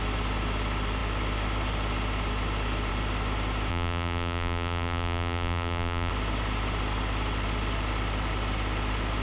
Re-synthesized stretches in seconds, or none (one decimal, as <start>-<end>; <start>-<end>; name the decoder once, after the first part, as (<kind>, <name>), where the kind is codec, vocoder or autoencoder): 3.7-6.1 (vocoder, BigVGAN v2)